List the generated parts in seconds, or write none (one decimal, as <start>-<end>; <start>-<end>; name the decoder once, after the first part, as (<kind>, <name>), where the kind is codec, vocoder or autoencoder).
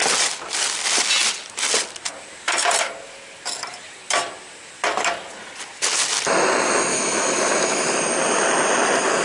6.9-7.9 (autoencoder, DAC-VAE)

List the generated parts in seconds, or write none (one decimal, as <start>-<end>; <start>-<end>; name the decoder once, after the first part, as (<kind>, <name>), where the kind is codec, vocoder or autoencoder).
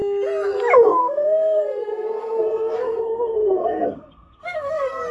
1.0-5.1 (codec, SNAC)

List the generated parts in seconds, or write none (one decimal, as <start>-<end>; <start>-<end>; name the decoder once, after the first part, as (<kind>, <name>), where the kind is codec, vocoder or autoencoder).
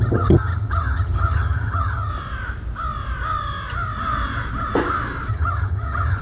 0.0-2.1 (vocoder, HiFi-GAN); 5.3-6.2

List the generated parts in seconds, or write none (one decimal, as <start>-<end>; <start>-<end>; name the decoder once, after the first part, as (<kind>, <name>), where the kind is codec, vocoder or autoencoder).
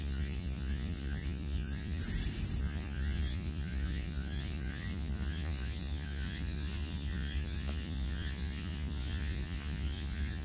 0.0-2.0 (vocoder, Vocos); 2.6-10.4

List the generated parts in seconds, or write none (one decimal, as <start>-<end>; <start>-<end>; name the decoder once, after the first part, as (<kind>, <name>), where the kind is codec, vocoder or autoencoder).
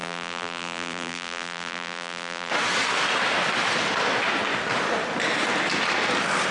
0.0-2.5 (vocoder, BigVGAN v2)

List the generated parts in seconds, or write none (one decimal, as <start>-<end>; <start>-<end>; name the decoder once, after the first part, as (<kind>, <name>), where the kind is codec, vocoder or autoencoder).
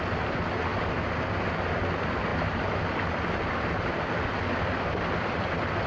none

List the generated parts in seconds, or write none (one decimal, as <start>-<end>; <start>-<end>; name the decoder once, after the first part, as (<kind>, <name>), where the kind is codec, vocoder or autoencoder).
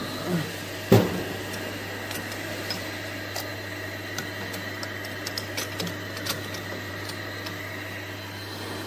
none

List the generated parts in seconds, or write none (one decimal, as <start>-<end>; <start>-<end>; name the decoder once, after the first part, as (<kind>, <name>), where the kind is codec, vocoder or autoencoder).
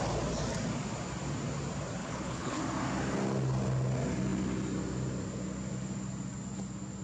2.0-2.6 (codec, HILCodec)